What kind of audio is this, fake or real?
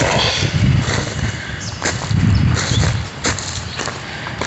fake